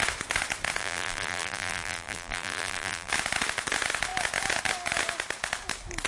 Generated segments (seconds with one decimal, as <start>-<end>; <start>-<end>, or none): 0.8-3.1